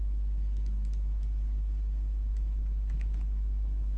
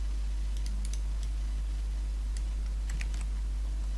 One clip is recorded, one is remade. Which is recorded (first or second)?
second